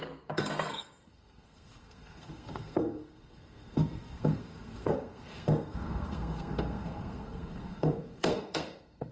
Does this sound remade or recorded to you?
remade